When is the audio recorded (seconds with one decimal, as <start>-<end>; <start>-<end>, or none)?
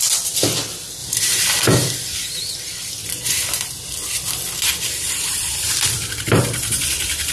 1.0-1.6